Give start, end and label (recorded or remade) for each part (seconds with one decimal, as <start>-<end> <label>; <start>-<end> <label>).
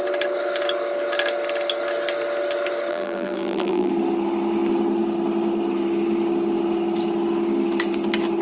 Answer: 0.0-2.9 recorded; 2.9-3.9 remade; 3.9-8.4 recorded